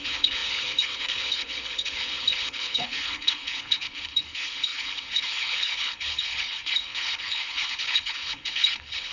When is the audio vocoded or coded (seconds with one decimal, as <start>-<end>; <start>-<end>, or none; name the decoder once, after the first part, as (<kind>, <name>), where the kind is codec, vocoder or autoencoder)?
0.0-9.1 (codec, HILCodec)